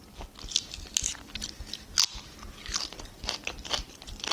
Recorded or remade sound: recorded